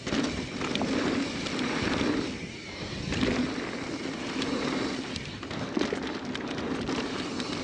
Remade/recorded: recorded